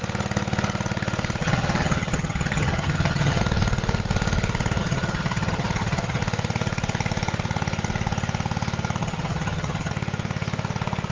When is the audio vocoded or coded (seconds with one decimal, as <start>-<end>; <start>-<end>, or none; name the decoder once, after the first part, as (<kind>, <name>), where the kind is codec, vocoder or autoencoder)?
1.4-3.4 (vocoder, HiFi-GAN); 4.8-6.2; 9.0-9.9